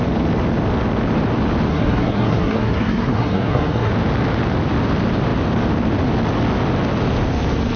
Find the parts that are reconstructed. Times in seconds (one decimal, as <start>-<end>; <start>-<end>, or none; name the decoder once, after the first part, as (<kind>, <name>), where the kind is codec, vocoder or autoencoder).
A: 1.7-3.9 (codec, SNAC)